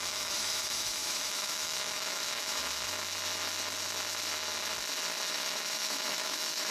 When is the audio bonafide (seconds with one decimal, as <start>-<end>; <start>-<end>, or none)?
2.6-5.3